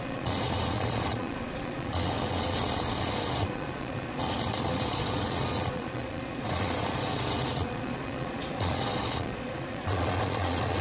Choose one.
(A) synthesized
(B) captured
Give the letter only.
A